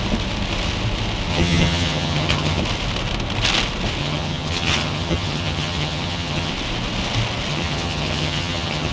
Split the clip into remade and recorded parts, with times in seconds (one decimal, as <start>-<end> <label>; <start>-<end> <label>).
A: 0.0-1.3 recorded; 1.3-2.6 remade; 2.6-4.0 recorded; 4.0-6.5 remade; 6.5-7.5 recorded; 7.5-8.9 remade